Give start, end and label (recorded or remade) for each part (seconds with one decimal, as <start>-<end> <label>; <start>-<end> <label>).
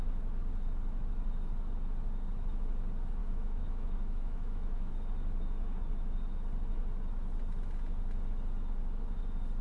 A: 0.0-3.2 recorded; 3.2-4.9 remade; 4.9-9.6 recorded